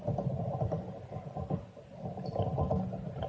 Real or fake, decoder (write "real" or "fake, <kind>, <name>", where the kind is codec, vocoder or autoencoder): real